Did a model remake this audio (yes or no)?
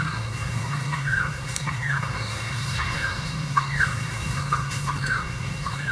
yes